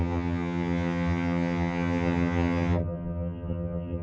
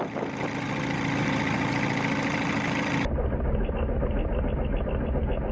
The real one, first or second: second